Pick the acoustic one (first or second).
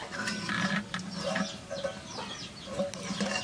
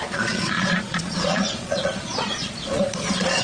first